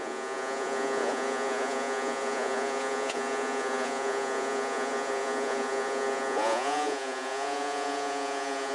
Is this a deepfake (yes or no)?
yes